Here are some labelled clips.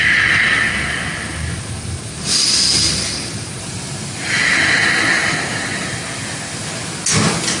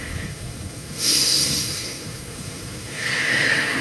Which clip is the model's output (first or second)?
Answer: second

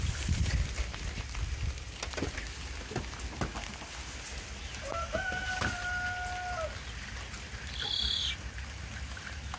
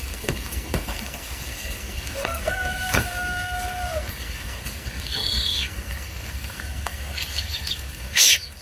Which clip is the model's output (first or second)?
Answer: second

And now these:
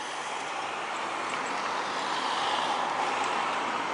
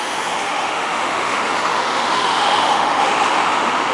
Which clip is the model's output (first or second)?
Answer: second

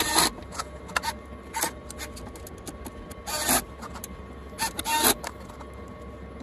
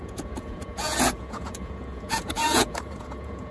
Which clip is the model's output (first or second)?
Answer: second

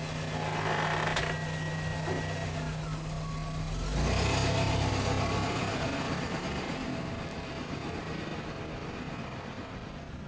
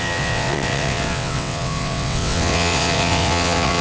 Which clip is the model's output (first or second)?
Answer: second